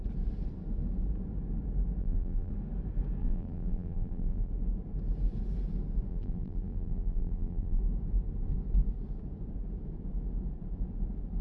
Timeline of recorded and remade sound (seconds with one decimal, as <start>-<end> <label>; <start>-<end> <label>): 0.0-2.0 recorded; 2.0-2.5 remade; 2.5-3.2 recorded; 3.2-4.5 remade; 4.5-6.1 recorded; 6.1-7.8 remade; 7.8-11.4 recorded